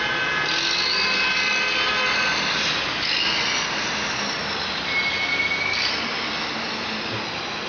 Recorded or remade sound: recorded